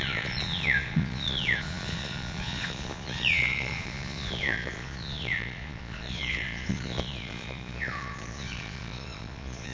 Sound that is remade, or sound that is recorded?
remade